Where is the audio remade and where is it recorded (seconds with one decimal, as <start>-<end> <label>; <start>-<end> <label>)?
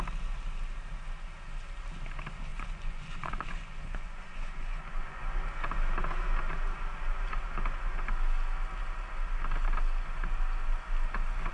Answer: 0.0-2.5 recorded; 2.5-5.2 remade; 5.2-11.5 recorded